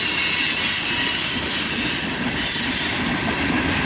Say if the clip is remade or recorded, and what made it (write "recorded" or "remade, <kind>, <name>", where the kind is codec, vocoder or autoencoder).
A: recorded